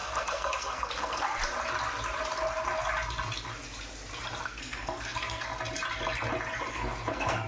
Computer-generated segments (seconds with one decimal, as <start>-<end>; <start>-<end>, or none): 0.0-1.4; 4.4-5.5; 6.7-7.5